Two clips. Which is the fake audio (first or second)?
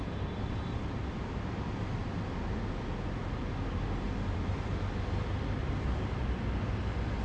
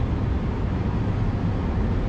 second